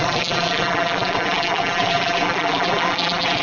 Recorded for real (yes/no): no